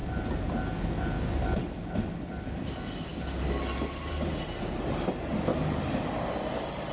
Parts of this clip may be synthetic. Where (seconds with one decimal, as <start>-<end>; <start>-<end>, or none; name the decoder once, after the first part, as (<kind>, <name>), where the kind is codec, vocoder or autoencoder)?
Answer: none